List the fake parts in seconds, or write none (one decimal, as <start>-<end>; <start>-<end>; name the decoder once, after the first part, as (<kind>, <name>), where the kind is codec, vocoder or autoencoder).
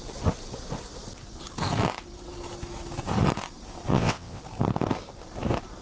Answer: 3.9-4.4 (vocoder, WaveNeXt)